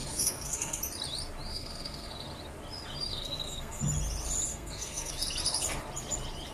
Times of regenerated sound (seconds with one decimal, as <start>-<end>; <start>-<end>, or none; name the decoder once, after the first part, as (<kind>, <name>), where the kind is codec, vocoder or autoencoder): 0.0-0.8 (codec, SNAC); 1.5-2.1; 3.1-3.8; 4.5-5.1